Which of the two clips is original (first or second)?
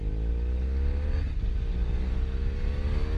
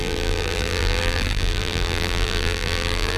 first